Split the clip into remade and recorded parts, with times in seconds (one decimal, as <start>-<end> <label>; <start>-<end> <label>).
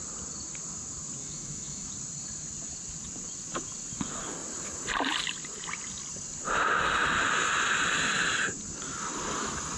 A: 0.0-1.2 recorded; 1.2-1.9 remade; 1.9-9.8 recorded